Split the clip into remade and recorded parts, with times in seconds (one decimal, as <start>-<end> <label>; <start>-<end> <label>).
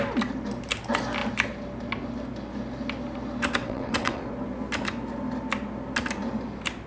0.0-3.6 recorded; 3.6-4.2 remade; 4.2-6.9 recorded